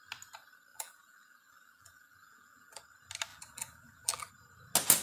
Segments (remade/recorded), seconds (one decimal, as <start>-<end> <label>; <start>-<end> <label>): 0.0-0.7 recorded; 0.7-2.8 remade; 2.8-3.3 recorded; 3.3-4.3 remade; 4.3-5.0 recorded